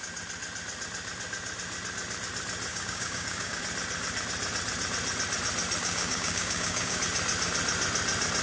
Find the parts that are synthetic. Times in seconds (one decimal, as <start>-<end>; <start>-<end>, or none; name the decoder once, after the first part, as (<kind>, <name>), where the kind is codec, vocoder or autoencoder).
2.7-3.6 (codec, DAC); 5.8-7.0